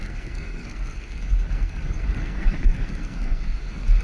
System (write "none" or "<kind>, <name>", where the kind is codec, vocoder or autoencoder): codec, SNAC